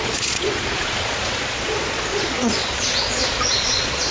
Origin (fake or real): fake